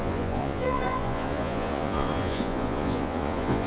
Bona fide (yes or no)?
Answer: no